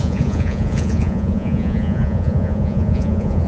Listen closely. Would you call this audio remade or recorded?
remade